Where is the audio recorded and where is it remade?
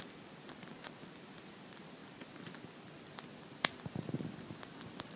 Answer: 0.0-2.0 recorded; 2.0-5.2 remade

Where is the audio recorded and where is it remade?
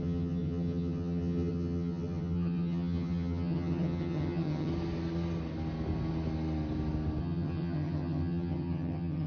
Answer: 0.0-4.7 remade; 4.7-7.2 recorded; 7.2-9.3 remade